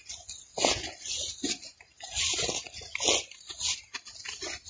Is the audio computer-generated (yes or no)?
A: no